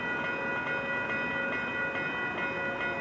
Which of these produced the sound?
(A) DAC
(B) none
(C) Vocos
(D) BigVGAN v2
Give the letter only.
B